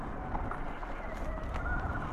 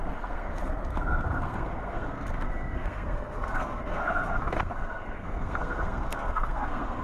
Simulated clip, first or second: second